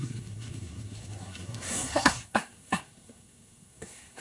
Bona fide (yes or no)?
no